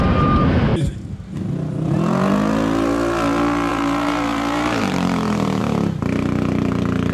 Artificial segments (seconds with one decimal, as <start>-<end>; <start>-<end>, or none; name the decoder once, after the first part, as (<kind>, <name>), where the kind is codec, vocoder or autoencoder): 0.0-0.7 (vocoder, BigVGAN v2); 3.7-7.1